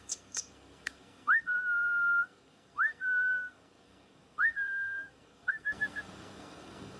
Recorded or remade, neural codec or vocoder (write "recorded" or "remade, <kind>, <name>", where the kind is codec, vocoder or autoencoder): remade, codec, SNAC